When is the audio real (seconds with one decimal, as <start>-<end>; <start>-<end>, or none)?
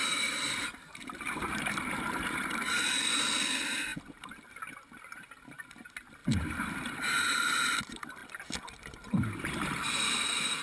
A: 2.8-6.2; 7.8-10.6